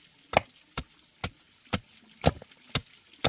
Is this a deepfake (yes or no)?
no